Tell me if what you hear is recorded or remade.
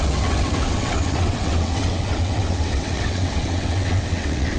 remade